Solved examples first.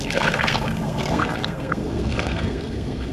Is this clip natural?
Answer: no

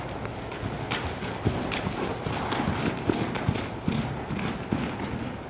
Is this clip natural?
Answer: yes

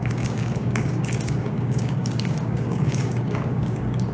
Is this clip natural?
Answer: no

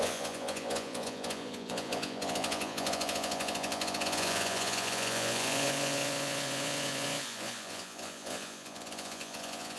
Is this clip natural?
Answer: no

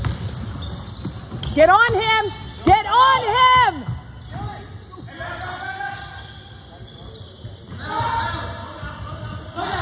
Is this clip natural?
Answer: yes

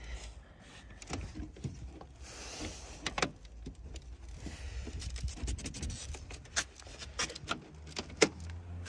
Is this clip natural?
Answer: yes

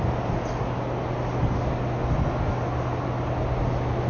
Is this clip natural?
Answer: yes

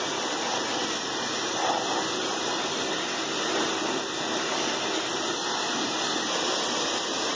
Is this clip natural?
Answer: yes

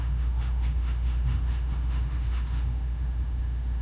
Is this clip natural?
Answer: no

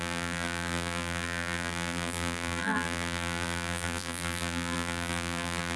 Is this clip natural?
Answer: no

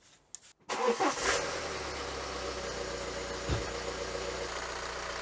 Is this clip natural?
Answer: yes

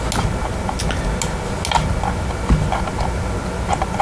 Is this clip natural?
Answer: yes